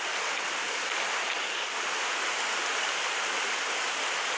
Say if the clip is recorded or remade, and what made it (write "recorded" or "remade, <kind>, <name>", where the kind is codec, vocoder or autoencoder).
recorded